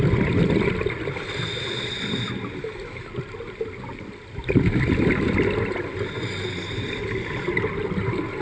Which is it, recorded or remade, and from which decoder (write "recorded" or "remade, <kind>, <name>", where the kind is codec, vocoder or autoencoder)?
recorded